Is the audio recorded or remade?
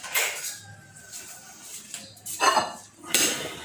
remade